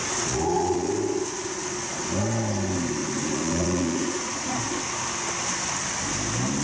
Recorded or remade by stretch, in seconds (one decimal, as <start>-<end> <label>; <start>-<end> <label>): 0.0-0.9 remade; 0.9-3.0 recorded; 3.0-4.6 remade; 4.6-6.6 recorded